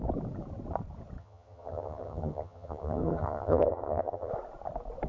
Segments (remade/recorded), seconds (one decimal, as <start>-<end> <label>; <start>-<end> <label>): 0.0-1.2 recorded; 1.2-4.3 remade; 4.3-5.1 recorded